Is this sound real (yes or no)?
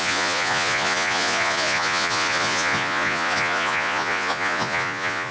no